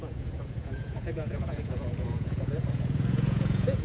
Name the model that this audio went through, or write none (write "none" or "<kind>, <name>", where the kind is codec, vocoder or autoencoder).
vocoder, Vocos